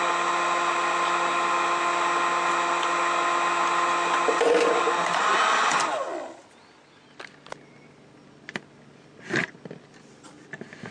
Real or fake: real